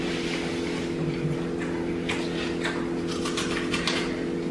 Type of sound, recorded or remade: recorded